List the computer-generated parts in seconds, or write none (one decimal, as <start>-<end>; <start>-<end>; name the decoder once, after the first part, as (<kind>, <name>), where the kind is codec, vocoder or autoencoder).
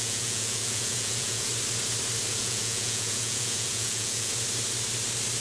0.0-1.5 (vocoder, Vocos); 2.3-4.3